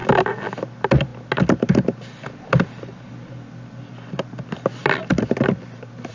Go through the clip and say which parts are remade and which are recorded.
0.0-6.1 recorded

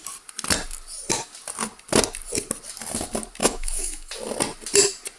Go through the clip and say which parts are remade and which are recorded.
0.0-3.4 recorded; 3.4-4.1 remade; 4.1-5.2 recorded